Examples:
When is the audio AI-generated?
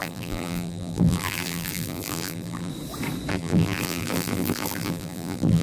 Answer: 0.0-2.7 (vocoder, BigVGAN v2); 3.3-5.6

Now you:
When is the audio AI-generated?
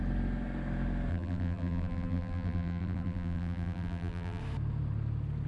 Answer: 1.1-4.4 (vocoder, BigVGAN v2)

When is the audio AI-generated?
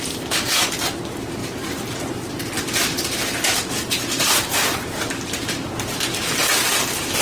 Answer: 1.4-5.7 (vocoder, BigVGAN v2)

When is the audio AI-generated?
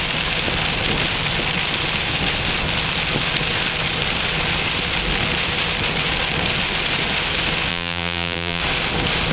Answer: 7.7-8.6 (vocoder, BigVGAN v2)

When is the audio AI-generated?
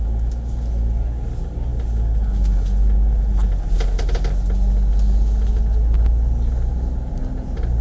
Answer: none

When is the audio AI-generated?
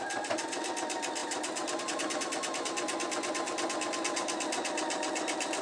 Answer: 1.2-1.8 (vocoder, BigVGAN v2)